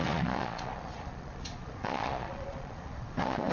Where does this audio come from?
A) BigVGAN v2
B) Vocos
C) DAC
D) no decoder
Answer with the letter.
B